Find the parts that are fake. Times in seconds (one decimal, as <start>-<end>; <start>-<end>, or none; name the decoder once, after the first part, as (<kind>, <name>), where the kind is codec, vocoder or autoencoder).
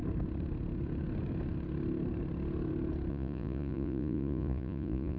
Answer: 3.1-5.2 (vocoder, Vocos)